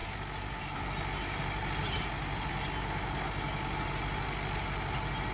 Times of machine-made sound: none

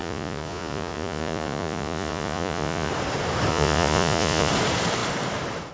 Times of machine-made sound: 0.0-2.9 (vocoder, Vocos); 3.5-4.5

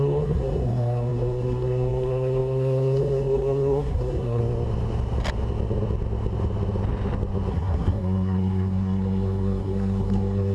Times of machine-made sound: 0.0-4.4 (codec, SNAC); 7.5-10.5

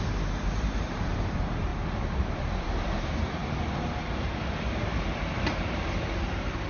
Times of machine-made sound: 0.0-1.7 (vocoder, BigVGAN v2); 2.3-3.4; 5.0-6.7

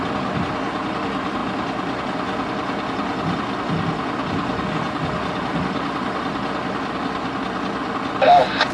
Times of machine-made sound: none

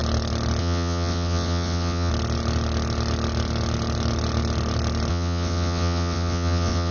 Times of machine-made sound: 0.6-2.1 (vocoder, WaveNeXt); 5.1-6.9